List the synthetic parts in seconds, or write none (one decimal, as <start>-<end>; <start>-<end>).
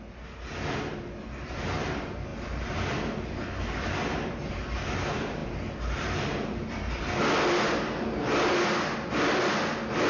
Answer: none